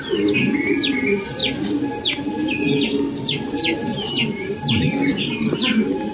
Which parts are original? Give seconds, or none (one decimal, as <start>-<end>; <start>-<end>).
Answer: 0.0-3.8; 4.5-6.1